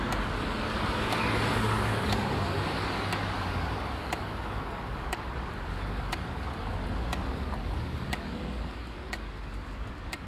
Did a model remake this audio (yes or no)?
yes